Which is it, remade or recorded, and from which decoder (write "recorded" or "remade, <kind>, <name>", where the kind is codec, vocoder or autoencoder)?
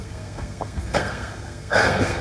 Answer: remade, codec, SNAC